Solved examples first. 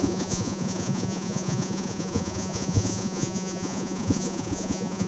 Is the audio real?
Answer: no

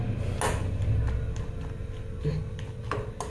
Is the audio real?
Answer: yes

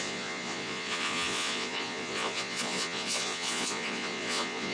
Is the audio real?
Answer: no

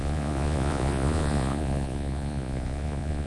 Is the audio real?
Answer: no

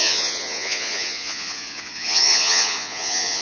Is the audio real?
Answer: no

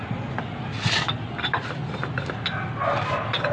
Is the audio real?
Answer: yes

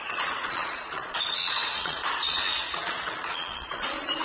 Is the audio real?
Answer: no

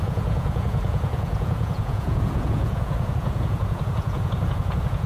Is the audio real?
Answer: no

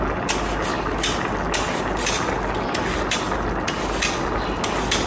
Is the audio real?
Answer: yes